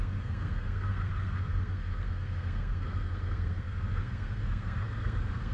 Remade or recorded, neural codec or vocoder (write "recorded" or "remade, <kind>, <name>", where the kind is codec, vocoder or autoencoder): remade, codec, SNAC